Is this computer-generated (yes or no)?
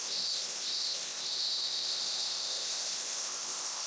yes